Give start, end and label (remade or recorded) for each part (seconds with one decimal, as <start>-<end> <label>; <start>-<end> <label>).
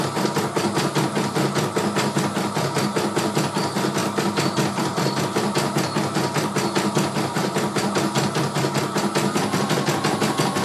0.0-4.0 recorded; 4.0-5.2 remade; 5.2-10.6 recorded